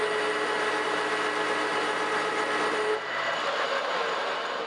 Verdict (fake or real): real